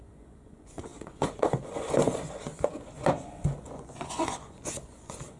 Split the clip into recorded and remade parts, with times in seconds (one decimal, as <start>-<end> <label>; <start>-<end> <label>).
0.0-5.4 remade